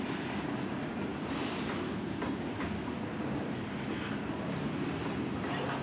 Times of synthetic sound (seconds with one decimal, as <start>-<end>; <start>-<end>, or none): none